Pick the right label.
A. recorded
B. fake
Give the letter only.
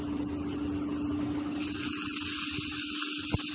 A